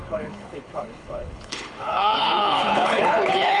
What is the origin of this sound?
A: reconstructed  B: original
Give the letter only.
A